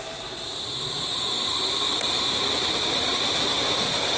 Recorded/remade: remade